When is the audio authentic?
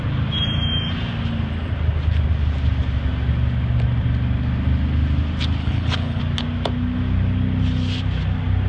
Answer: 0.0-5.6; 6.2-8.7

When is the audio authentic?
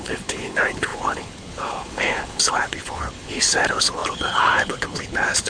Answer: none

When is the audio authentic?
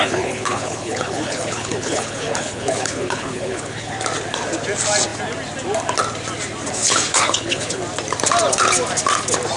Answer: 3.9-6.8; 7.8-9.6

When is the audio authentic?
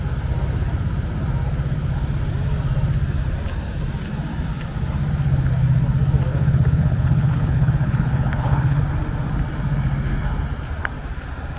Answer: 0.0-6.3; 8.8-11.6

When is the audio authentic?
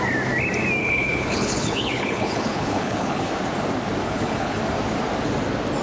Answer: 0.0-0.8; 3.3-4.0; 4.6-5.8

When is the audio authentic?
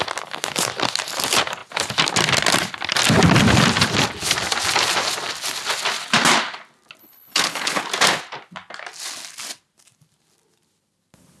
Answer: 0.0-7.0; 7.8-11.4